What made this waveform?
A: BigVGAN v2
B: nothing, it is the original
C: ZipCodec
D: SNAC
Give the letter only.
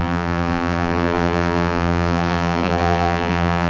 A